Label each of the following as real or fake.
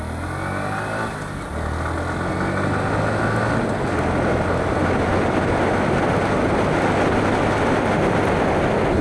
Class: real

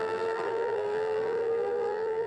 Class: fake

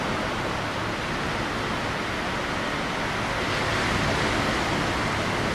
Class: real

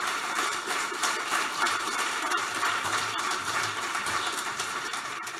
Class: fake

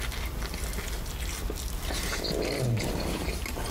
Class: real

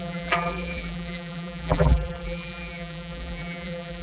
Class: fake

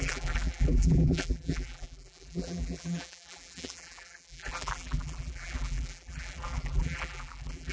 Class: fake